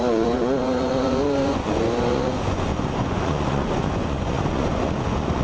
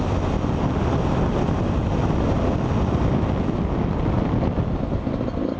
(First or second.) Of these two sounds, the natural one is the second